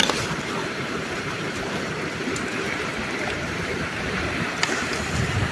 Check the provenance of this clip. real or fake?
fake